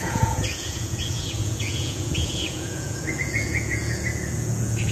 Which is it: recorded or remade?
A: remade